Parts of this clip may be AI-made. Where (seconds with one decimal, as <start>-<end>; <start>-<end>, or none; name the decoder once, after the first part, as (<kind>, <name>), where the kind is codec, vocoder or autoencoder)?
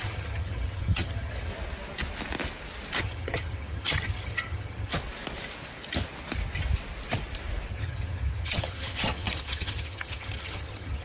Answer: 0.0-1.5 (vocoder, HiFi-GAN); 3.0-4.9; 7.7-11.0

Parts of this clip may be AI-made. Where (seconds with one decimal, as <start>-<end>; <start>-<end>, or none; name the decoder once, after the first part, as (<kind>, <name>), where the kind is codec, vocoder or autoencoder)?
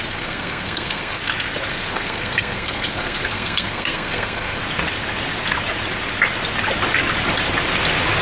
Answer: 0.0-1.2 (codec, SNAC); 1.7-4.6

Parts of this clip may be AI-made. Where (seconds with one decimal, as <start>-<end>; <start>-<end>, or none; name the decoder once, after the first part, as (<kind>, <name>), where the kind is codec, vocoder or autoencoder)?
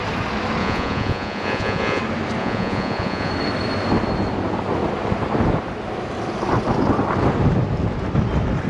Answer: 0.6-2.0 (vocoder, Vocos); 2.4-3.3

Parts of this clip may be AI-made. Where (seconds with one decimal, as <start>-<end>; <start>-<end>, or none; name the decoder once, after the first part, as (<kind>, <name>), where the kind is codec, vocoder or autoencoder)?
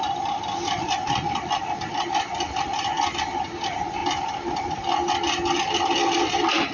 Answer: none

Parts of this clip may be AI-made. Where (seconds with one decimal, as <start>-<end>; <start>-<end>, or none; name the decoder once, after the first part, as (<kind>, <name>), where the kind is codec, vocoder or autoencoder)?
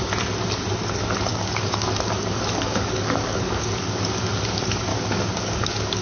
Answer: 1.3-4.3 (codec, DAC); 4.9-6.0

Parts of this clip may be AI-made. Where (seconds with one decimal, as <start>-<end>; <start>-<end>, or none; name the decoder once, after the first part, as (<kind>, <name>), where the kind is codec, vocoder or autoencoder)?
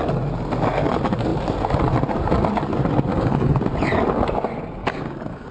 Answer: 3.1-3.6 (codec, DAC); 4.8-5.5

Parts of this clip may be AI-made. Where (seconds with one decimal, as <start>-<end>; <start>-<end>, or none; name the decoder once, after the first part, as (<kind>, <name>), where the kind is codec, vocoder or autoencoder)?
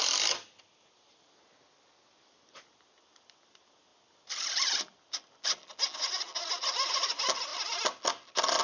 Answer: none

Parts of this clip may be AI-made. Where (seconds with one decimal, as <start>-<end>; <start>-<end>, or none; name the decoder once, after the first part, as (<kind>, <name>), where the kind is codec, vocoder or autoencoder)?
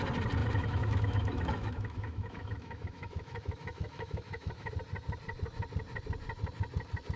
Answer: 0.4-4.7 (autoencoder, DAC-VAE)